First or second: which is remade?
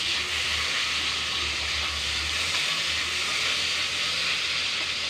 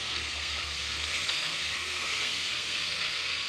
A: second